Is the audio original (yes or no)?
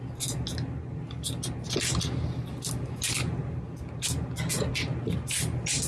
yes